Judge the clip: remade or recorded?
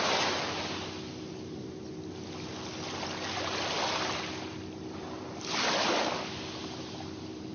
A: recorded